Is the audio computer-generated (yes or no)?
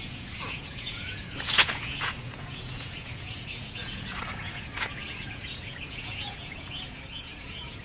yes